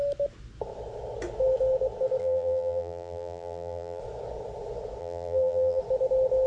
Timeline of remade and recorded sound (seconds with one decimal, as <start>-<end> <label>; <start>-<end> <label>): 0.0-2.2 recorded; 2.2-4.0 remade; 4.0-5.0 recorded; 5.0-5.8 remade; 5.8-6.5 recorded